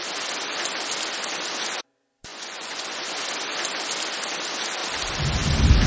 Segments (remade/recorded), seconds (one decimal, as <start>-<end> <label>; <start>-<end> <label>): 0.0-2.3 recorded; 2.3-3.2 remade; 3.2-5.9 recorded